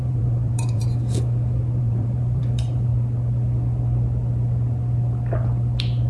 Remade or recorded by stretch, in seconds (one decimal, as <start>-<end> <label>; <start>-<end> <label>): 0.0-0.8 remade; 0.8-1.8 recorded; 1.8-2.9 remade; 2.9-6.1 recorded